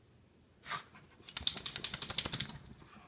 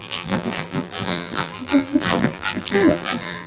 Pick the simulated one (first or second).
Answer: second